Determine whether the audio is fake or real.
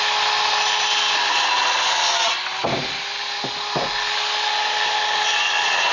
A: real